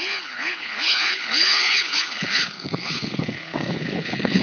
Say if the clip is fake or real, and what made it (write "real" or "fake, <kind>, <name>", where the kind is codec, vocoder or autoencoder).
fake, codec, HILCodec